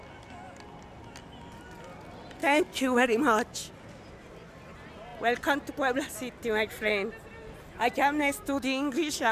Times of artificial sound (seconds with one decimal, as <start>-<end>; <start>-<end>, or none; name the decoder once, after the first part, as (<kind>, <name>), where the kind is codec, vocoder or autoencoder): 2.4-3.2 (codec, DAC); 8.2-9.3